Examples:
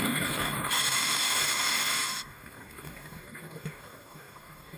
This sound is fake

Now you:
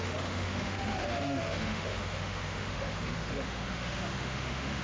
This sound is fake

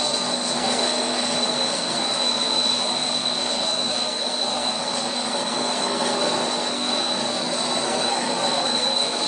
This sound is fake